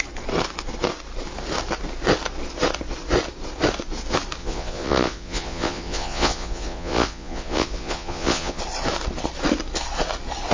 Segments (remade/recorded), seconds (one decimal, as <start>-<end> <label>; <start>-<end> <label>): 0.0-4.4 recorded; 4.4-8.6 remade; 8.6-10.5 recorded